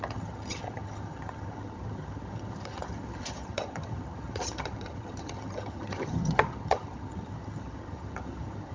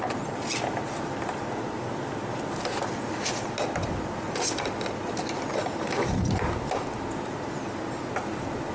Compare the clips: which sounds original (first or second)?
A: second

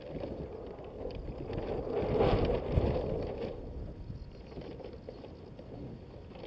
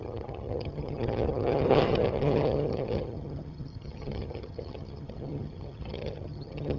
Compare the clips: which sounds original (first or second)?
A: first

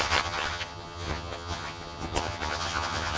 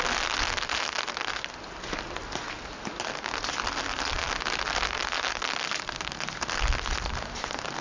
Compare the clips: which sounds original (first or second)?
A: second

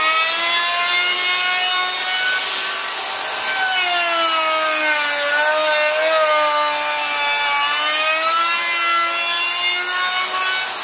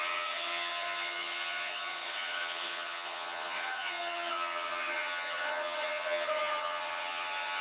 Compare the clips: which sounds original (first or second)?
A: first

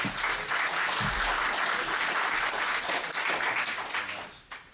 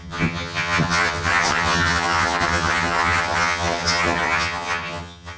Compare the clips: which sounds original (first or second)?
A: first